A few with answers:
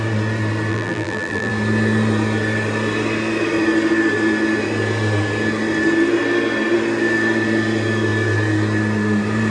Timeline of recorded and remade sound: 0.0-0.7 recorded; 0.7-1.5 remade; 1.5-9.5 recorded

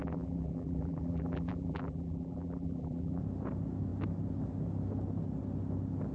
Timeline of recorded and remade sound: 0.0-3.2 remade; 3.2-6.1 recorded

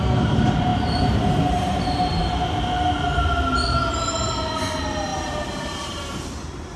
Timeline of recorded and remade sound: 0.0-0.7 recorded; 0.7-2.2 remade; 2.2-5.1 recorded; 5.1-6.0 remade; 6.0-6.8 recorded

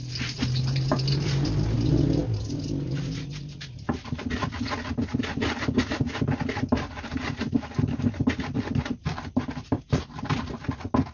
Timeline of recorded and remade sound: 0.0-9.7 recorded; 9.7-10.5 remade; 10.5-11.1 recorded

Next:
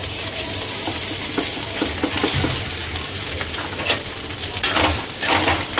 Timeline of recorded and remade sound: 0.0-2.1 remade; 2.1-2.8 recorded; 2.8-5.8 remade